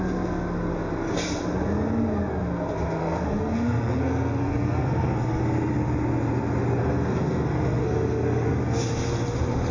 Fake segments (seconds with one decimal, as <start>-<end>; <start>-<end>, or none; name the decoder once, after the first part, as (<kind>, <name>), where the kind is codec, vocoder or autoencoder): 3.0-5.4 (codec, SNAC); 6.8-8.8